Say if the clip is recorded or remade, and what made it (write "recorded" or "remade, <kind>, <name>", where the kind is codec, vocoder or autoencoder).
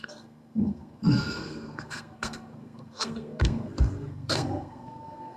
remade, codec, SNAC